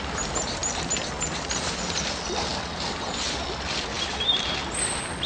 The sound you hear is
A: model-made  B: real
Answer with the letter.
B